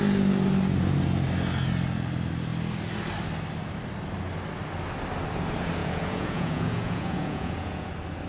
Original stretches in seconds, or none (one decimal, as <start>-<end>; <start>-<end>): 0.0-5.8; 7.9-8.3